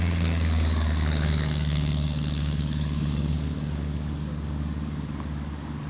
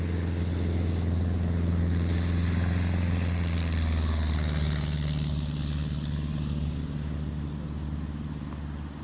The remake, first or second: first